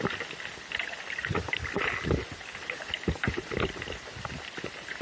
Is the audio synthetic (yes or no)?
no